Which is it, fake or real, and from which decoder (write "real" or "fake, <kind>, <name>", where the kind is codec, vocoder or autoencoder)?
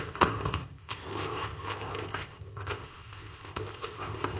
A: fake, codec, ZipCodec